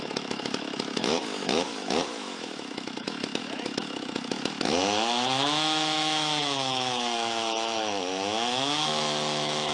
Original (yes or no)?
no